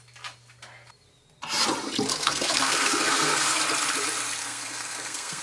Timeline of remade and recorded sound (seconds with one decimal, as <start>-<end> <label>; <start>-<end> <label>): 0.0-2.1 recorded; 2.1-3.6 remade; 3.6-4.4 recorded; 4.4-5.4 remade